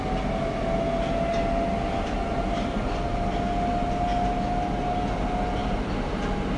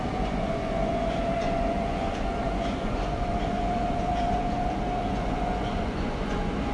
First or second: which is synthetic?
second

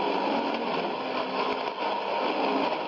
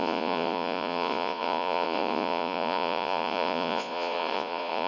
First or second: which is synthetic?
second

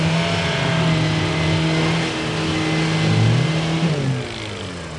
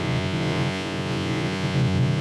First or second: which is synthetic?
second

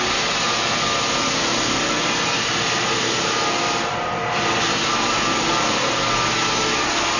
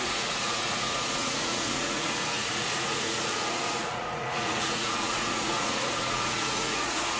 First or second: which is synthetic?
second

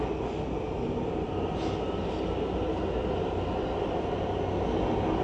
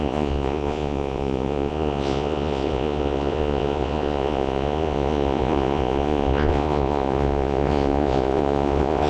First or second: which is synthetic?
second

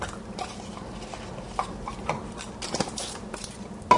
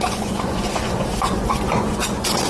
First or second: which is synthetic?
second